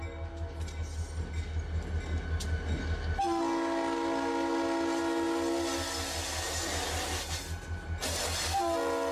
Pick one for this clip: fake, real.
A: real